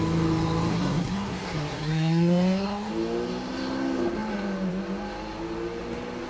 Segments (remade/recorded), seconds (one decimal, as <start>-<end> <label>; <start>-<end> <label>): 0.0-0.7 recorded; 0.7-2.9 remade; 2.9-6.3 recorded